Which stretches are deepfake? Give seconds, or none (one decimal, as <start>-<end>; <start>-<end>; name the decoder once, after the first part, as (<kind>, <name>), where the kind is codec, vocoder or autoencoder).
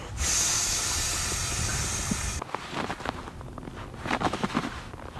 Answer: none